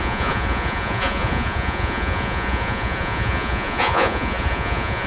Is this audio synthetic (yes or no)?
yes